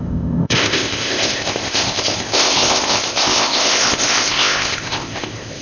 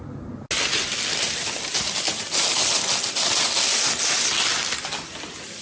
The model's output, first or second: first